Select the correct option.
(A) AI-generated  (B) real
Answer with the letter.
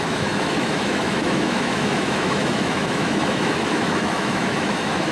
A